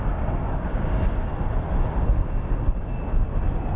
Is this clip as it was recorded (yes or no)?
yes